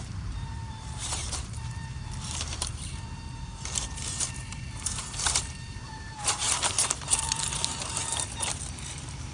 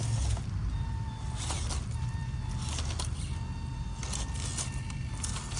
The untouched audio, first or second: second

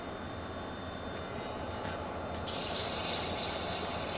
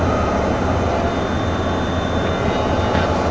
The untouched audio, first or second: second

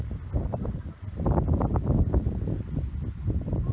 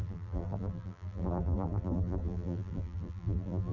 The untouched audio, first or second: first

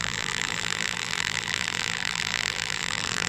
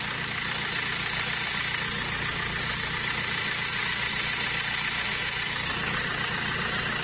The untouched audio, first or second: second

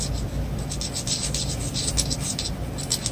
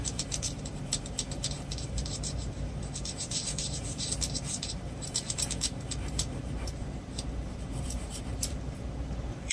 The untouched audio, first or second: first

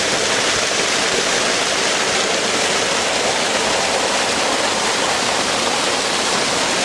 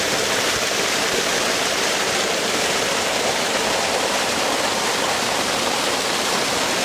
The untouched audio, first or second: first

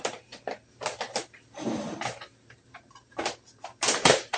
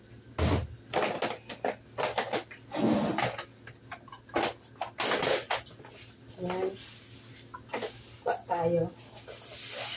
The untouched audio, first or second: second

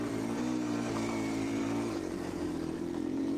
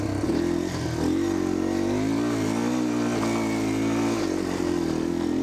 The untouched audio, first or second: second